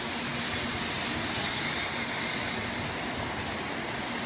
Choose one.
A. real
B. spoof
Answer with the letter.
A